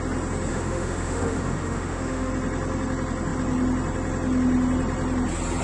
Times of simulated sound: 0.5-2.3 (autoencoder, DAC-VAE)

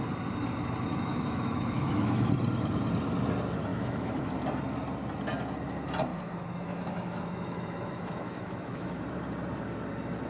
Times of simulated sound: 0.9-2.3 (autoencoder, DAC-VAE); 3.7-4.3; 6.1-9.0

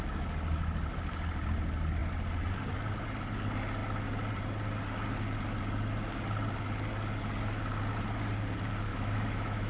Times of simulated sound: 8.9-9.7 (autoencoder, DAC-VAE)

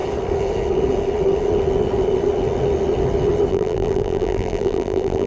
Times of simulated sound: 3.5-5.3 (vocoder, BigVGAN v2)

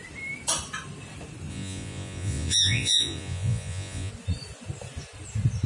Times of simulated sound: 1.5-4.1 (vocoder, Vocos)

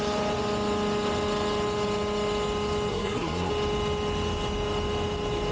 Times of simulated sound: 2.9-3.5 (codec, SNAC)

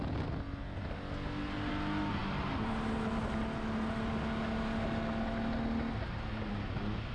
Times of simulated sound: none